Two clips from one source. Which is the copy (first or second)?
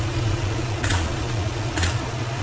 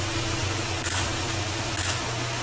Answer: first